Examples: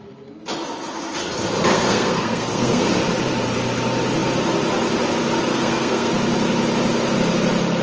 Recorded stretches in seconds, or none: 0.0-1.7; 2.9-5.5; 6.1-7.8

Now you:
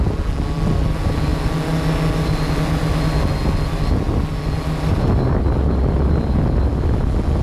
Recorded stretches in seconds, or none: 0.0-7.4

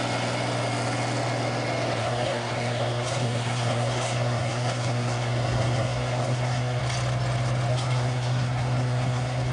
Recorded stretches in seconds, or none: 0.0-2.0; 6.8-7.7